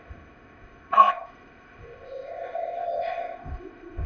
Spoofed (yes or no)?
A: yes